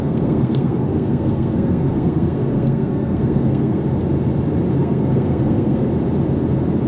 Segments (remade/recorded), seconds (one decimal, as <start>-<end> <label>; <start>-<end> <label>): 0.0-3.8 remade; 3.8-4.8 recorded; 4.8-5.9 remade; 5.9-6.9 recorded